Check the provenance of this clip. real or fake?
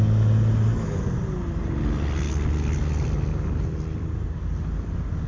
real